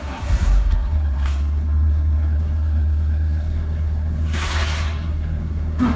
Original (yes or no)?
no